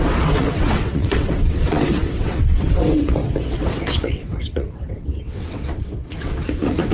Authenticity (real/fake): fake